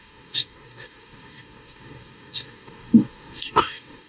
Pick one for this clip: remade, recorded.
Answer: remade